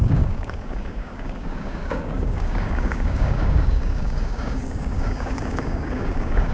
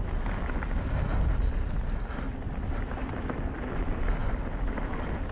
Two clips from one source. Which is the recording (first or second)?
second